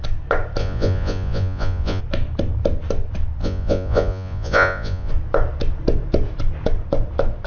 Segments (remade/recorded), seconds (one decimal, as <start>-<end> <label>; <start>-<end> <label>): 0.0-0.6 recorded; 0.6-2.0 remade; 2.0-3.4 recorded; 3.4-5.1 remade; 5.1-7.5 recorded

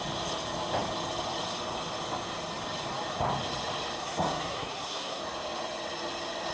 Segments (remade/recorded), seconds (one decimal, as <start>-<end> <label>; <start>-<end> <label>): 0.0-4.0 recorded; 4.0-5.2 remade; 5.2-6.5 recorded

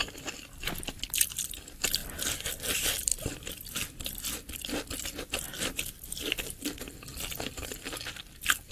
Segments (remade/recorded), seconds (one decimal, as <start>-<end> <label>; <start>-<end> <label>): 0.0-2.0 remade; 2.0-2.5 recorded; 2.5-8.7 remade

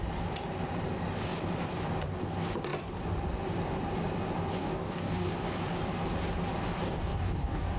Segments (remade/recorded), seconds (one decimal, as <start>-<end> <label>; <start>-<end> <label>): 0.0-4.6 recorded; 4.6-5.3 remade; 5.3-6.8 recorded; 6.8-7.8 remade